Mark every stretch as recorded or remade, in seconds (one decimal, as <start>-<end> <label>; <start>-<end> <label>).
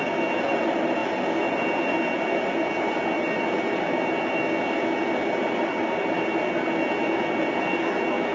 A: 0.0-8.3 recorded